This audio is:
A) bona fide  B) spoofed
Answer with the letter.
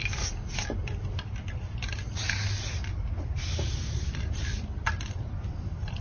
A